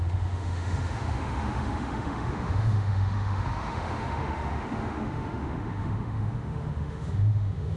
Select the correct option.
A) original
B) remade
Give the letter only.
B